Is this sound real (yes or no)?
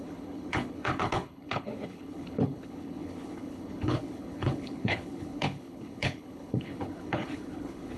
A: no